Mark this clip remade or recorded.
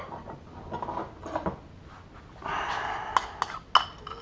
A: recorded